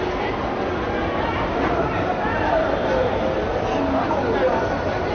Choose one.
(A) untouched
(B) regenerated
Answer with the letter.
A